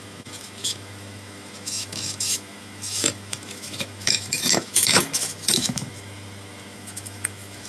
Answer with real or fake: fake